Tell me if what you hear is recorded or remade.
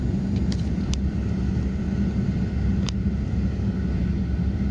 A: recorded